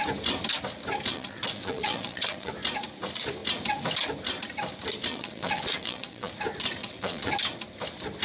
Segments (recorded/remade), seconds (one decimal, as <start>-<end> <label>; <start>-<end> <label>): 0.0-1.1 recorded; 1.1-2.5 remade; 2.5-5.1 recorded; 5.1-6.3 remade; 6.3-6.8 recorded; 6.8-7.3 remade; 7.3-8.2 recorded